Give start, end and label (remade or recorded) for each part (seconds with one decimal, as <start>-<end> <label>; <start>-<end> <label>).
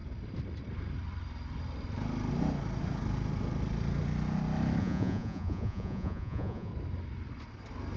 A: 0.0-4.8 recorded; 4.8-6.7 remade; 6.7-8.0 recorded